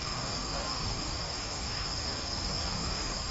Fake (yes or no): yes